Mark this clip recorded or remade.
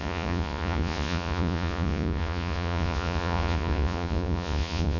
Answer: remade